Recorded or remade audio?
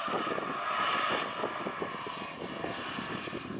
recorded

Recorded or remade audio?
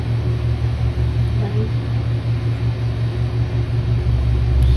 recorded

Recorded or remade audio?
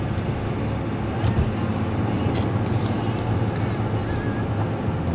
recorded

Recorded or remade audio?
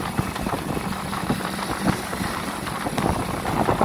remade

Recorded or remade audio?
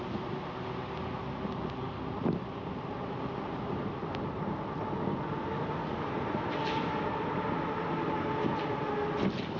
recorded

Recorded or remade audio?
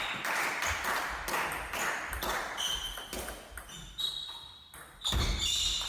recorded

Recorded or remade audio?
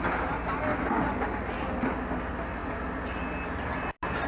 recorded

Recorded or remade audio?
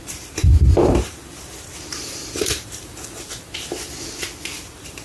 remade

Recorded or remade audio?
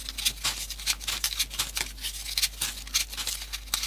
recorded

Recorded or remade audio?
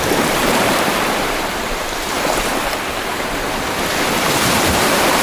remade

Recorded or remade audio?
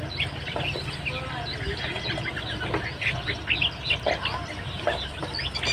recorded